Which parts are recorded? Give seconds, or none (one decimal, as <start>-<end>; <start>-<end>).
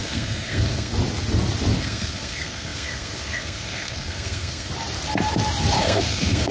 0.9-1.8; 4.7-5.8